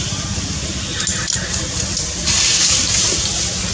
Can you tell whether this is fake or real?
real